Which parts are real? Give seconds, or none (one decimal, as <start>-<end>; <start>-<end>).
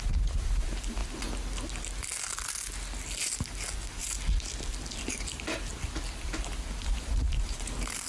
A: 1.0-5.1; 5.7-6.8